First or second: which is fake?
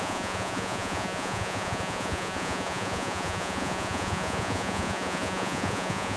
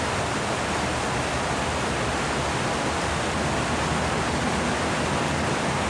first